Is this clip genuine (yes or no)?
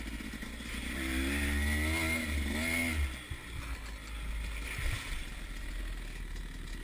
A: yes